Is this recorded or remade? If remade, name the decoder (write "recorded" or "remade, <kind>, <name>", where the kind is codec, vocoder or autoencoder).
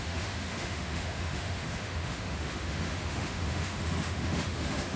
remade, autoencoder, DAC-VAE